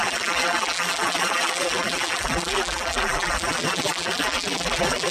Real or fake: fake